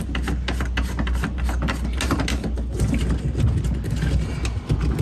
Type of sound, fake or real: real